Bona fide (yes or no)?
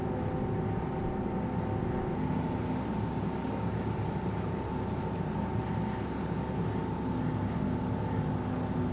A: yes